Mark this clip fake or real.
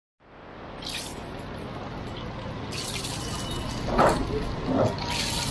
real